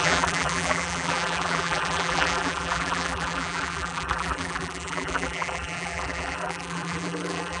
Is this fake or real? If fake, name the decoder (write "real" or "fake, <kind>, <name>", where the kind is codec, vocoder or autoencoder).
fake, vocoder, BigVGAN v2